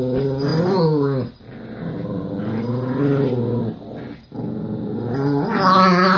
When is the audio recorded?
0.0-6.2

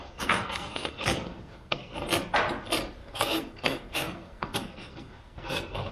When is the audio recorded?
2.0-3.0

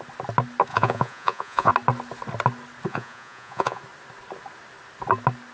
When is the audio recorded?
0.0-0.7; 1.7-2.9; 3.8-5.5

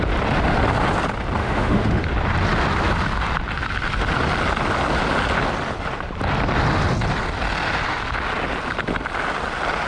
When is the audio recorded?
0.0-1.4; 2.0-9.9

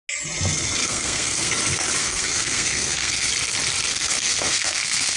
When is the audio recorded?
0.0-0.8; 1.5-2.0; 3.3-3.9

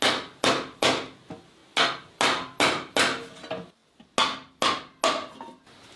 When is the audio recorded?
0.0-6.0

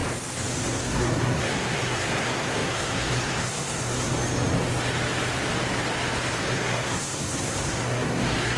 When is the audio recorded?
0.0-0.7; 4.1-6.4

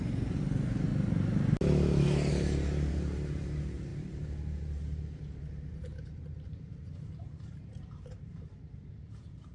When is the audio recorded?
0.9-2.3